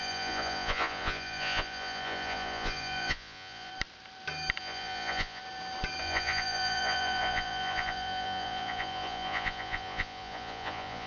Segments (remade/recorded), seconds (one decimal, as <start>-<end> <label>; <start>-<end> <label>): 0.0-3.7 remade; 3.7-4.6 recorded; 4.6-5.4 remade; 5.4-6.0 recorded; 6.0-11.1 remade